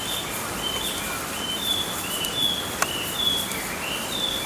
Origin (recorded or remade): recorded